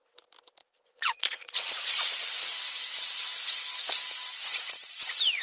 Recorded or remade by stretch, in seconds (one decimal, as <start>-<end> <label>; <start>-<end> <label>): 0.0-0.6 recorded; 0.6-2.3 remade; 2.3-4.5 recorded; 4.5-5.0 remade; 5.0-5.4 recorded